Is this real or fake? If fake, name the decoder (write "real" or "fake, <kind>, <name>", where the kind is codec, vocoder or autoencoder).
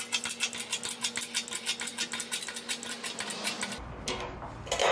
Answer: real